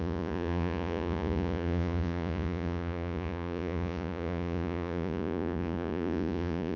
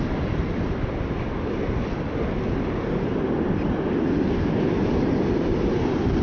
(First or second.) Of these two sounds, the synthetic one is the first